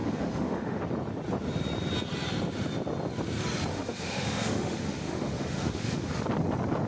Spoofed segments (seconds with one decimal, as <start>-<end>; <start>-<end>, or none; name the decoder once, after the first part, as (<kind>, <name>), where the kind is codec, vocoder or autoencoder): 0.0-0.8 (autoencoder, DAC-VAE); 3.7-6.1